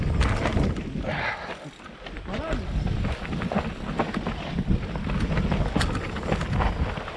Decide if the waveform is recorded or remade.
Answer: recorded